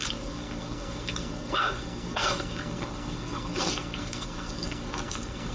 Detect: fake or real fake